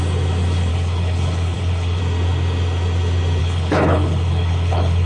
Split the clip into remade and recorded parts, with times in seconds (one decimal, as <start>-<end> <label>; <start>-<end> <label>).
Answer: 0.0-0.7 recorded; 0.7-2.0 remade; 2.0-3.4 recorded; 3.4-5.1 remade